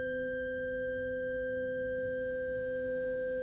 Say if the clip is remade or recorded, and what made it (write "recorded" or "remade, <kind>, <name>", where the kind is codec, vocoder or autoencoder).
remade, codec, DAC